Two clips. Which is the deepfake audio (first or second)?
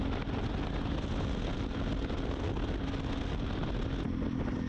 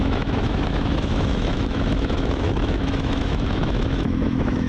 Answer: second